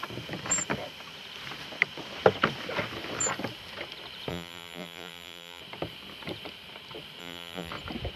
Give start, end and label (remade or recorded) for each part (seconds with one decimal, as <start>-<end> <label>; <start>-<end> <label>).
0.0-4.3 recorded; 4.3-5.6 remade; 5.6-7.2 recorded; 7.2-7.7 remade; 7.7-8.2 recorded